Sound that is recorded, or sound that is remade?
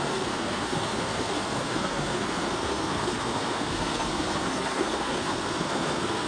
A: remade